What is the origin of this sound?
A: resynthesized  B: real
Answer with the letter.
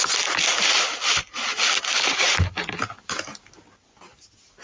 B